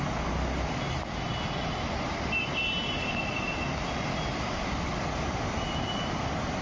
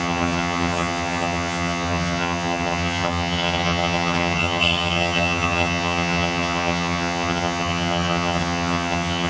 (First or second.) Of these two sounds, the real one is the first